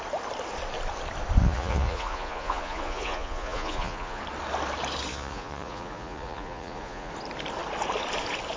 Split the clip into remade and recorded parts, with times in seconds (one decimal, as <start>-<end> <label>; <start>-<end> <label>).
0.0-1.4 recorded; 1.4-4.2 remade; 4.2-5.1 recorded; 5.1-7.1 remade; 7.1-8.6 recorded